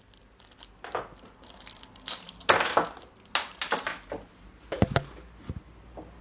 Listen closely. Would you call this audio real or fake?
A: real